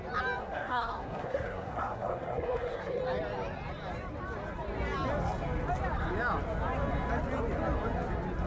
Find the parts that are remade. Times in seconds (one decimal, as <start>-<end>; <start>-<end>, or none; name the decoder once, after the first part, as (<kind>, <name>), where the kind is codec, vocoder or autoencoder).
0.4-3.0 (codec, SNAC)